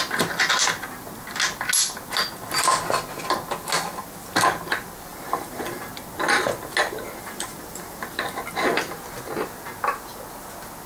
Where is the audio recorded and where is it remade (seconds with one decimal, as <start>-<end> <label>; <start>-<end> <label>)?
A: 0.0-5.1 recorded; 5.1-5.9 remade; 5.9-7.2 recorded; 7.2-8.2 remade; 8.2-10.9 recorded